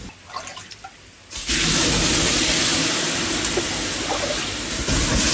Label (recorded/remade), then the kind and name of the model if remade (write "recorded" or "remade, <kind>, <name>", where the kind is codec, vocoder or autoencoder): recorded